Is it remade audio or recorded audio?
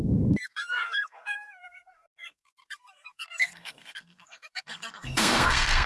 remade